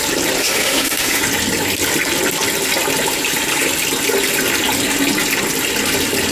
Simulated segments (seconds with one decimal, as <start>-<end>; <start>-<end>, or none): 0.4-1.2